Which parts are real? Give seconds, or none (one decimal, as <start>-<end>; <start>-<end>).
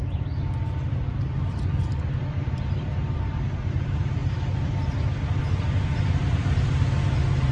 0.0-7.5